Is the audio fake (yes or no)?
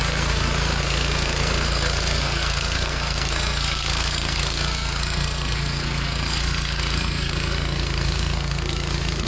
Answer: yes